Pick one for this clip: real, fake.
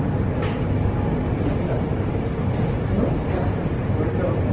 real